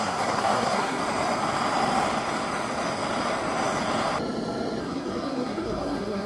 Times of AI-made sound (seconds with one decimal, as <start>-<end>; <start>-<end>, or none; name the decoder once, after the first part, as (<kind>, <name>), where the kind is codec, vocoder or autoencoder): 0.0-1.0 (codec, SNAC); 4.8-6.3